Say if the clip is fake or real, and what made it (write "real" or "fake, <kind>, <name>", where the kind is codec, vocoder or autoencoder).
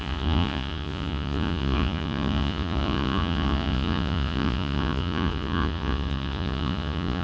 fake, vocoder, Vocos